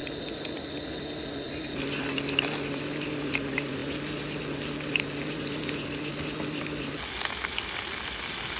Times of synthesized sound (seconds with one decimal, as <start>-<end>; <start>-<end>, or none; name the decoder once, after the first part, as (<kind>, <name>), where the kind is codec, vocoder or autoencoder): none